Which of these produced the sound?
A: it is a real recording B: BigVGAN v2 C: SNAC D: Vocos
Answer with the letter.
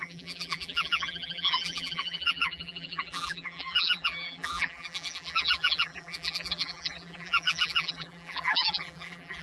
B